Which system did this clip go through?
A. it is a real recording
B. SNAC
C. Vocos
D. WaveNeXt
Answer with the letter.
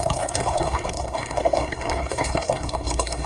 B